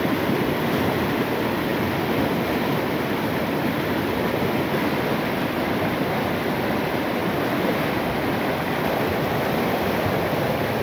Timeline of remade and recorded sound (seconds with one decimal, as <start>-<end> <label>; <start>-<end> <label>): 0.0-10.8 recorded